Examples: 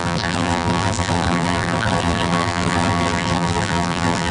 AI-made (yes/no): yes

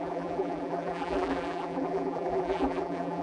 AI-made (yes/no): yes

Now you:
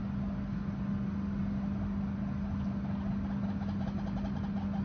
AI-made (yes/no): no